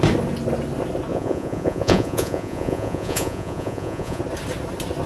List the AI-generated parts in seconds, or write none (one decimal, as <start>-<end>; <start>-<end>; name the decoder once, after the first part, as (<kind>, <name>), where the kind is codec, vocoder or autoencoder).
1.1-4.2 (vocoder, Vocos)